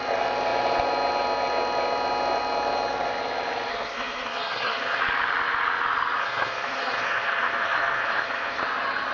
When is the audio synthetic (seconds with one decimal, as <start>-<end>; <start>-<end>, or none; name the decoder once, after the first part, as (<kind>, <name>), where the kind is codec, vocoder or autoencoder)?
3.7-5.0 (codec, SNAC); 6.2-8.6